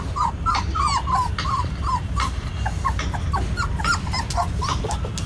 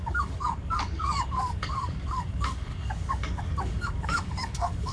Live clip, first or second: first